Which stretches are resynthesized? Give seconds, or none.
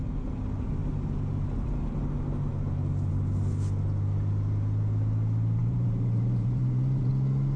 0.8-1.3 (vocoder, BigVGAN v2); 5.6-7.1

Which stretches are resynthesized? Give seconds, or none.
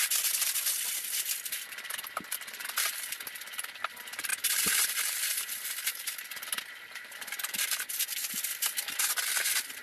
0.0-9.8 (vocoder, BigVGAN v2)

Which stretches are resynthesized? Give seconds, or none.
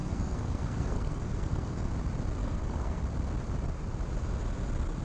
0.0-1.9 (codec, SNAC); 2.4-3.0